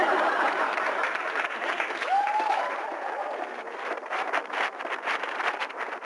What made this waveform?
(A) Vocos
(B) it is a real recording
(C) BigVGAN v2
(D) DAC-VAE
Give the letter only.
C